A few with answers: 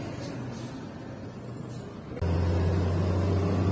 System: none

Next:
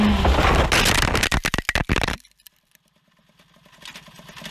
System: none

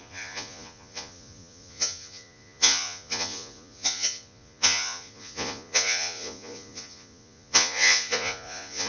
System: vocoder, Vocos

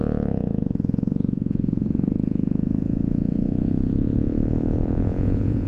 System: vocoder, Vocos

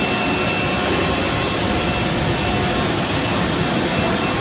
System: none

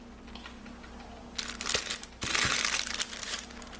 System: none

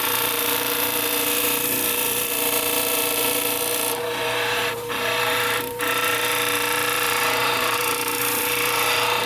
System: vocoder, BigVGAN v2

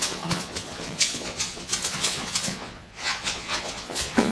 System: vocoder, Vocos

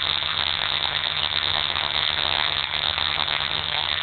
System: vocoder, HiFi-GAN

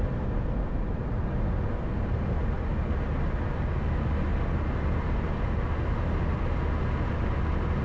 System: none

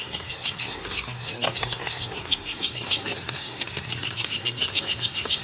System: codec, SNAC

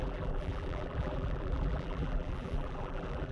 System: vocoder, BigVGAN v2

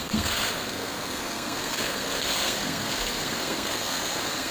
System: codec, SNAC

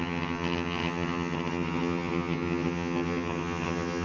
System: vocoder, HiFi-GAN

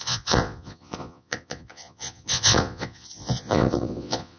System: vocoder, Vocos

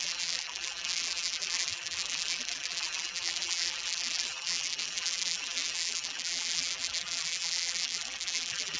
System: vocoder, BigVGAN v2